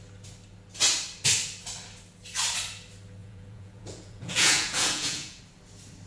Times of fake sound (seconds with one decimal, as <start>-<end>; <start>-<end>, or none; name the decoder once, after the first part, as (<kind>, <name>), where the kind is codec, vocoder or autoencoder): 3.2-5.4 (vocoder, Vocos)